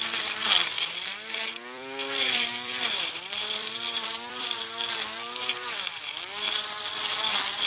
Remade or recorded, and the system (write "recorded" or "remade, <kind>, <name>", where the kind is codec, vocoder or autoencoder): remade, vocoder, BigVGAN v2